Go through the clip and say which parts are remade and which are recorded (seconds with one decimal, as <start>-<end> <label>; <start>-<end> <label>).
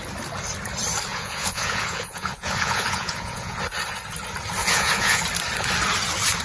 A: 0.0-1.1 recorded; 1.1-3.6 remade; 3.6-4.6 recorded; 4.6-5.2 remade; 5.2-6.4 recorded